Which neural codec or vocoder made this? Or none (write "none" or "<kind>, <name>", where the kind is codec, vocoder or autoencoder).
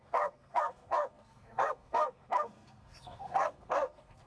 codec, SNAC